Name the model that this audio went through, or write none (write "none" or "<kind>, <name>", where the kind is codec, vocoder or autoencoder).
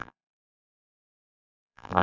vocoder, BigVGAN v2